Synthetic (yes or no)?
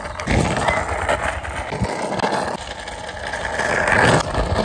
no